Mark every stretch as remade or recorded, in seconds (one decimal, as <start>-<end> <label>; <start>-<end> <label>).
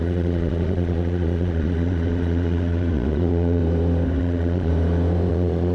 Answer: 0.0-3.6 remade; 3.6-4.2 recorded; 4.2-4.7 remade; 4.7-5.3 recorded; 5.3-5.7 remade